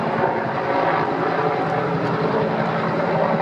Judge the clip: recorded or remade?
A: recorded